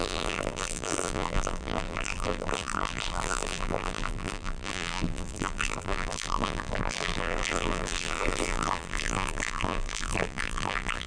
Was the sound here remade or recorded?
remade